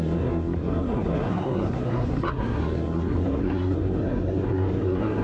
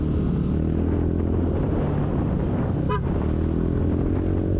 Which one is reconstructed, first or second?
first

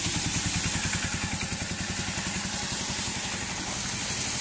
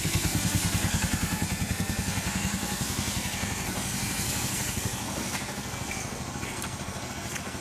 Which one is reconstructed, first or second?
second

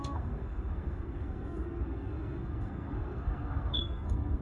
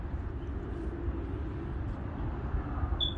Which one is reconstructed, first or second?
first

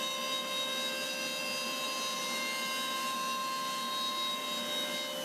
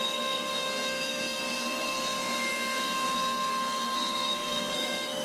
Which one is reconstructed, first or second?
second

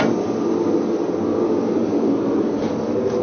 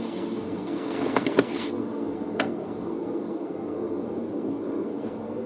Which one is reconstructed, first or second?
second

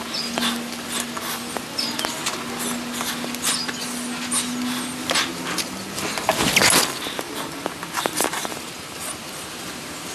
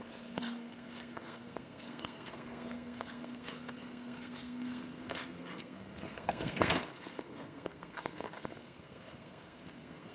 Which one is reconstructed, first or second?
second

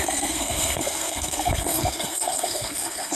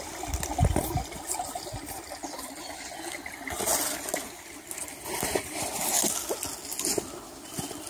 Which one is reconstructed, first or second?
first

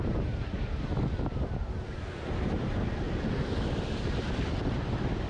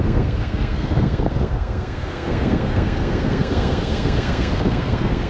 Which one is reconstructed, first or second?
second